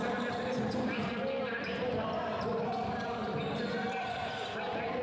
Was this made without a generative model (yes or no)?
no